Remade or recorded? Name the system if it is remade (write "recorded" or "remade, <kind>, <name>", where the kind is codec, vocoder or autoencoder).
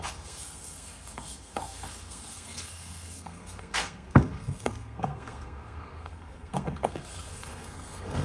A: remade, codec, SNAC